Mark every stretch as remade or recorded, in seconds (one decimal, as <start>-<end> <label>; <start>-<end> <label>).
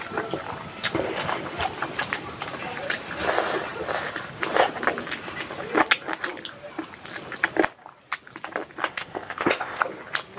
0.0-8.9 recorded; 8.9-9.8 remade; 9.8-10.4 recorded